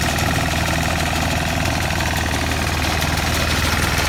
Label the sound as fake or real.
real